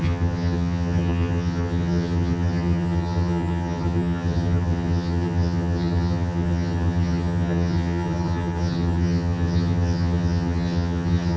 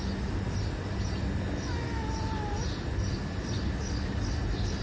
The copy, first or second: first